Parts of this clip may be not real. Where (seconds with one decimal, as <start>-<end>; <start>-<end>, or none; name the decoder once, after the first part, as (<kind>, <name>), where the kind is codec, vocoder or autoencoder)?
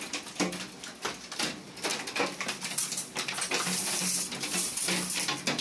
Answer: none